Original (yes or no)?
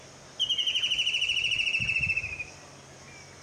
yes